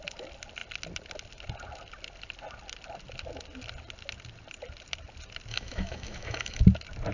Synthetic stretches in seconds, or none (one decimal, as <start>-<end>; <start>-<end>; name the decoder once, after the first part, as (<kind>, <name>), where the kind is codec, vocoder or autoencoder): 5.5-6.6 (autoencoder, DAC-VAE)